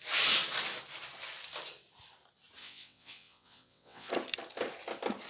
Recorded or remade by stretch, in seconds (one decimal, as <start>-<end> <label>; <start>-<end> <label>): 0.0-2.6 recorded; 2.6-4.1 remade; 4.1-5.3 recorded